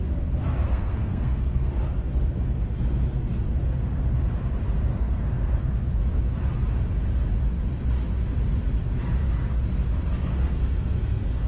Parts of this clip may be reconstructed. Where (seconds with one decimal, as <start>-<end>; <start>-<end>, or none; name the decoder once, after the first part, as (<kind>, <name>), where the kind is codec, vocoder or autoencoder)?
0.6-1.7 (codec, SNAC); 4.9-5.9; 10.3-11.5